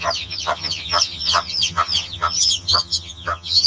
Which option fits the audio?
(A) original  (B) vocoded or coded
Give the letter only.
B